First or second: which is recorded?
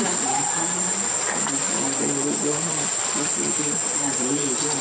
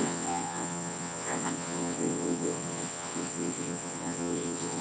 first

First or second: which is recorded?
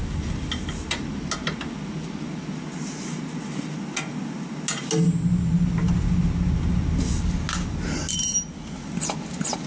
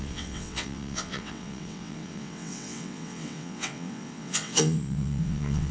first